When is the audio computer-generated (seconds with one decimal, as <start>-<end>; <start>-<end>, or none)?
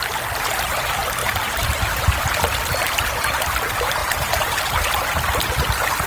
1.2-2.2; 4.0-4.8